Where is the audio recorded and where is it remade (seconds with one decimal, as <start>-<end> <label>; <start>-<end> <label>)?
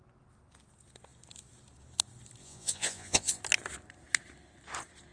0.0-2.4 recorded; 2.4-3.4 remade; 3.4-5.1 recorded